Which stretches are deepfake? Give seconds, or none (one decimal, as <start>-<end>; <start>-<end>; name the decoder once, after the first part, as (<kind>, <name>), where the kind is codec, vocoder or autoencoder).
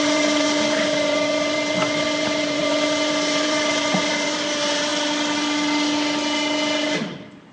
0.0-4.9 (vocoder, BigVGAN v2)